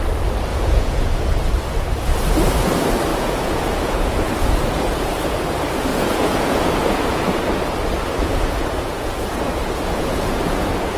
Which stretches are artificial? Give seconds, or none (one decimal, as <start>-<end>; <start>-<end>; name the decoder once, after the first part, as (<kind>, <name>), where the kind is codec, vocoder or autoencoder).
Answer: 0.5-1.3 (vocoder, Vocos); 3.1-5.4; 5.9-7.4; 8.2-11.0